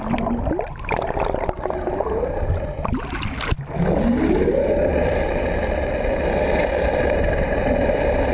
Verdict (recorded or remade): recorded